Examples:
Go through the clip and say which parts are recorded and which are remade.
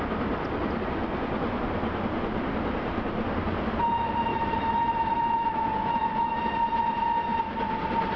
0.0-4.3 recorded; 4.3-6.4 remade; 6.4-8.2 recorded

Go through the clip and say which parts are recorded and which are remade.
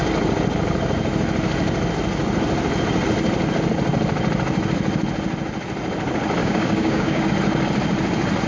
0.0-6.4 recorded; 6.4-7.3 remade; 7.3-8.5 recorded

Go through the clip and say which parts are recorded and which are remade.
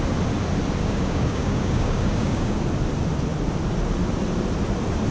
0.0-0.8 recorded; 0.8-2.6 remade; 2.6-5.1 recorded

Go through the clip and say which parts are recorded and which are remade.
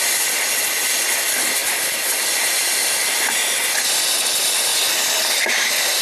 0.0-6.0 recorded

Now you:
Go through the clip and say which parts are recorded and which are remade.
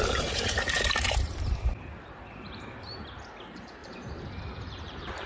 0.0-5.3 remade